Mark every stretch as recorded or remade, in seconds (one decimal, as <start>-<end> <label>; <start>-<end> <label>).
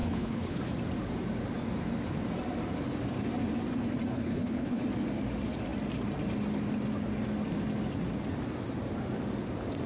0.0-0.6 remade; 0.6-4.1 recorded; 4.1-4.8 remade; 4.8-9.9 recorded